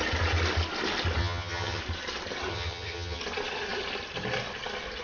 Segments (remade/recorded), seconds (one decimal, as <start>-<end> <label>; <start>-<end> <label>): 0.0-1.2 recorded; 1.2-1.8 remade; 1.8-2.5 recorded; 2.5-3.2 remade; 3.2-5.0 recorded